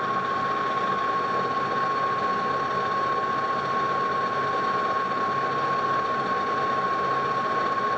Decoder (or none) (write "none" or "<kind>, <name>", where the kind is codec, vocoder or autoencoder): none